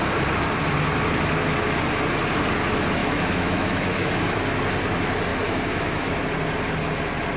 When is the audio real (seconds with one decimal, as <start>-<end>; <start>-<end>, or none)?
0.0-3.0; 4.1-5.3; 6.1-7.4